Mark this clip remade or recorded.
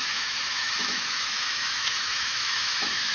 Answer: remade